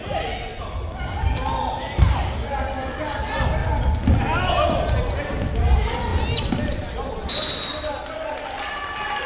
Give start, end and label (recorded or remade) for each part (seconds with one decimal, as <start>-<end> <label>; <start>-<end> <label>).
0.0-9.3 recorded